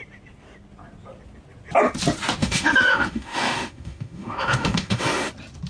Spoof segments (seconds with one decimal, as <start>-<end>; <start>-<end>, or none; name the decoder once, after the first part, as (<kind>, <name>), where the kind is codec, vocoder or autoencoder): 2.4-5.3 (autoencoder, DAC-VAE)